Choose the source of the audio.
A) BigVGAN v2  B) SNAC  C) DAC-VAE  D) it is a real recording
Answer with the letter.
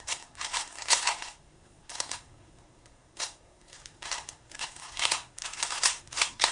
B